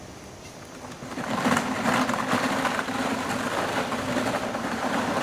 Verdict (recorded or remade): remade